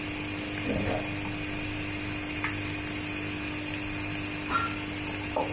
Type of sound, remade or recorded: recorded